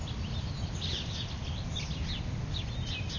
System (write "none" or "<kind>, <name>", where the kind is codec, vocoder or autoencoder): none